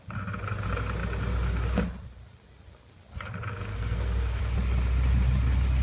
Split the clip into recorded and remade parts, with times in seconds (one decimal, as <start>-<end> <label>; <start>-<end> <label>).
0.0-3.7 recorded; 3.7-4.4 remade; 4.4-5.8 recorded

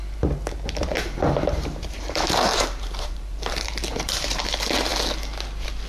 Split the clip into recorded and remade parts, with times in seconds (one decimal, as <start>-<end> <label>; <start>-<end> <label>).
0.0-0.9 recorded; 0.9-4.4 remade; 4.4-5.9 recorded

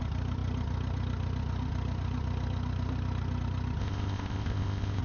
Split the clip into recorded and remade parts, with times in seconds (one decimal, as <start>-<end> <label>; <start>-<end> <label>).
0.0-3.8 recorded; 3.8-5.0 remade

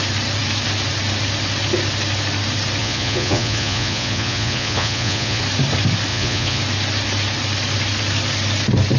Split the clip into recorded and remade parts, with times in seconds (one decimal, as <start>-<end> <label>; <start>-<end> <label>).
0.0-2.8 recorded; 2.8-5.4 remade; 5.4-6.1 recorded; 6.1-6.6 remade; 6.6-9.0 recorded